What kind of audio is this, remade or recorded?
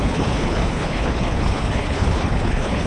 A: remade